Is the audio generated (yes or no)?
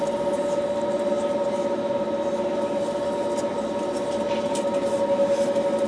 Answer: no